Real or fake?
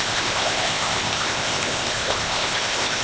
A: fake